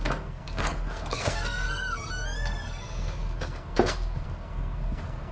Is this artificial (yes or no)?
yes